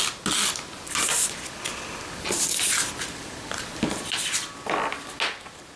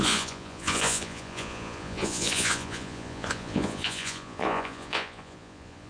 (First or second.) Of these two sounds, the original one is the first